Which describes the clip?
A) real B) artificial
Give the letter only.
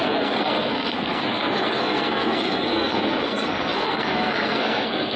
B